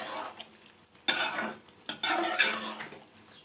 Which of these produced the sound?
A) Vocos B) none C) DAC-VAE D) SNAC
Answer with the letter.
B